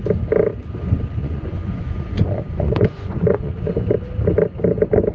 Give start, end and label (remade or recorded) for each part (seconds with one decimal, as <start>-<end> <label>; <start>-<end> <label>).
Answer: 0.0-1.2 recorded; 1.2-3.7 remade; 3.7-5.1 recorded